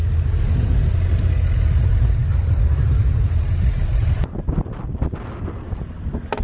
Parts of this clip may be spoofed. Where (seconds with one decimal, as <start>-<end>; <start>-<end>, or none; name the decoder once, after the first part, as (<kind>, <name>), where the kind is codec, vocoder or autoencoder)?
none